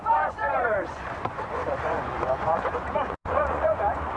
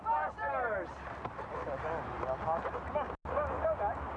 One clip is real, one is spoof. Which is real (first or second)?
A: second